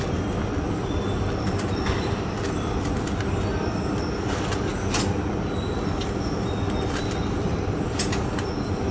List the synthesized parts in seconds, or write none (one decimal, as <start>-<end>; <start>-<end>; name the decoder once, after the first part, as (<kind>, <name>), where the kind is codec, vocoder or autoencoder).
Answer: 0.8-3.2 (vocoder, BigVGAN v2)